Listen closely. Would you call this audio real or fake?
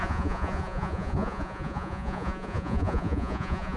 fake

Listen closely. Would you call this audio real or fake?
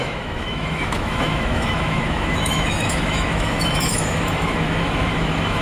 fake